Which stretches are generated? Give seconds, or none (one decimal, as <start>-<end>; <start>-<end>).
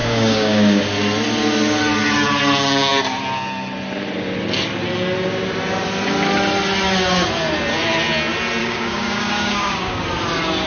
0.0-0.8; 8.6-10.0